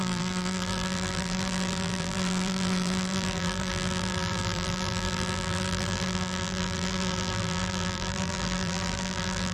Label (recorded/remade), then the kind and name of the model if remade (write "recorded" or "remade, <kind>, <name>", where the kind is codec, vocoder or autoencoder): remade, vocoder, BigVGAN v2